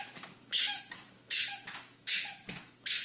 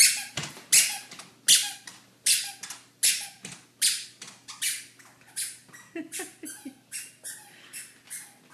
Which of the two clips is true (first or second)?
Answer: second